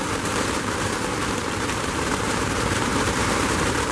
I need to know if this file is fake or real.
fake